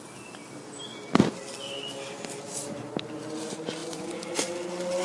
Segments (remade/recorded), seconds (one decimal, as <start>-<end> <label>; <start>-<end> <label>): 0.0-3.8 recorded; 3.8-4.4 remade; 4.4-5.0 recorded